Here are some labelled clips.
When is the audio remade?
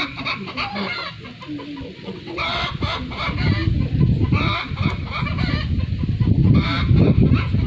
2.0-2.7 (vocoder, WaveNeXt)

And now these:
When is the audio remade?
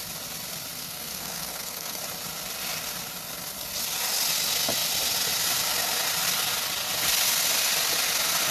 0.8-2.0 (codec, SNAC)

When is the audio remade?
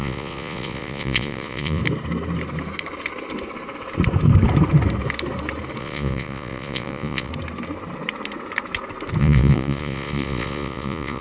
0.0-1.8 (vocoder, Vocos); 5.8-7.3; 9.2-11.2